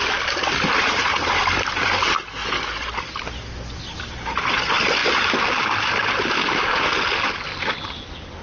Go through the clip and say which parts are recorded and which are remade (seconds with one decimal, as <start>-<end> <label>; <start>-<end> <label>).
0.0-1.1 recorded; 1.1-2.0 remade; 2.0-2.4 recorded; 2.4-3.1 remade; 3.1-5.0 recorded; 5.0-6.8 remade; 6.8-8.4 recorded